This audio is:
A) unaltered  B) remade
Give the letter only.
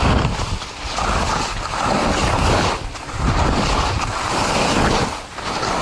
A